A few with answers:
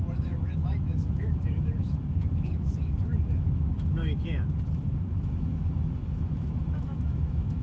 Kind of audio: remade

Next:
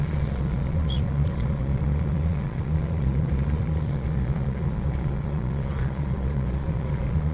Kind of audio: remade